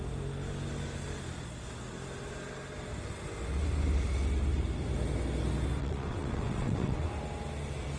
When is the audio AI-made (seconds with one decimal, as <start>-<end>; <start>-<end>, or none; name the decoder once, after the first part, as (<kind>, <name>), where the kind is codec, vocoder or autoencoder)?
5.8-7.1 (vocoder, WaveNeXt)